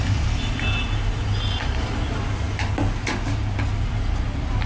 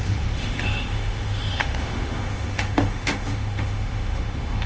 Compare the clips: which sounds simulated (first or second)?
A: second